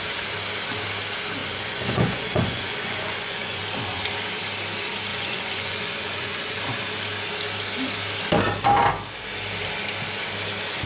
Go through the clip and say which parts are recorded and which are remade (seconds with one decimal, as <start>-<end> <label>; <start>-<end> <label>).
0.0-1.4 recorded; 1.4-3.6 remade; 3.6-5.1 recorded; 5.1-6.6 remade; 6.6-10.9 recorded